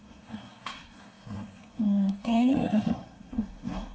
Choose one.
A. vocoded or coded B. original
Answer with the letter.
A